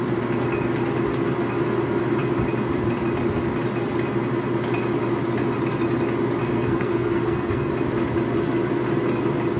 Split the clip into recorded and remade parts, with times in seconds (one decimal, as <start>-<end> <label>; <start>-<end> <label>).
0.0-6.4 recorded; 6.4-7.7 remade; 7.7-9.6 recorded